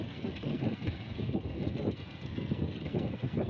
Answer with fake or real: fake